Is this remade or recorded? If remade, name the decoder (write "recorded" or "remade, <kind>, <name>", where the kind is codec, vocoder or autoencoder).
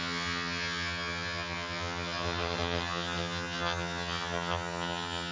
remade, vocoder, HiFi-GAN